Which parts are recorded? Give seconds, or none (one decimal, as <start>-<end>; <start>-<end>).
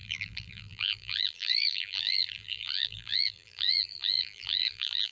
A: none